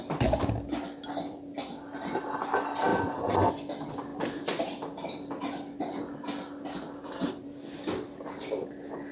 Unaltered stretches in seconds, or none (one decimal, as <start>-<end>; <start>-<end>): 0.0-9.1